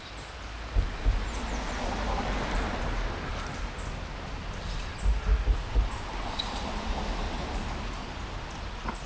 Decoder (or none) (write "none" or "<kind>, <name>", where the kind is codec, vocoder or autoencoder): none